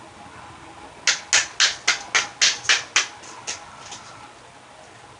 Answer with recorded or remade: recorded